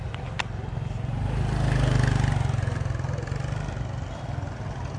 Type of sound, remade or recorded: recorded